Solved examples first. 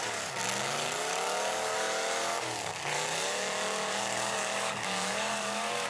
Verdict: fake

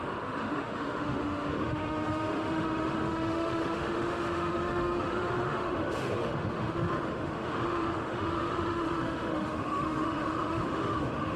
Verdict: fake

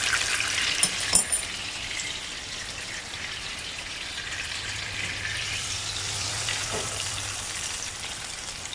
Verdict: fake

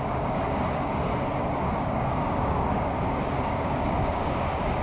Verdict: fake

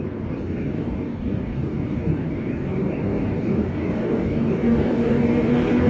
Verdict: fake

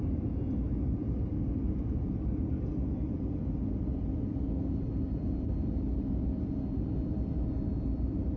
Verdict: real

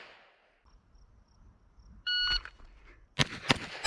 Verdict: real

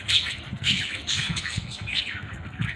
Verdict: fake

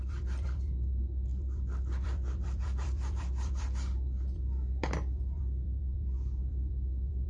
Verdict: fake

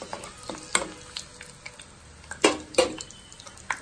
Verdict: real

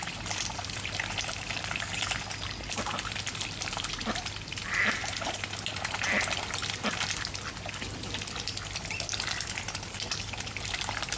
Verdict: real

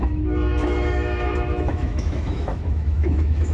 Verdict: fake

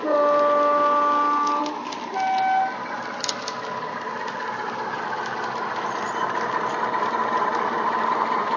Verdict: real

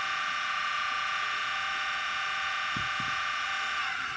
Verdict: real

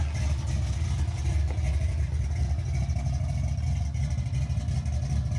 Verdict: real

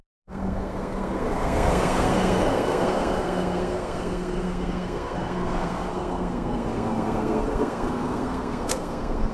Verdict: fake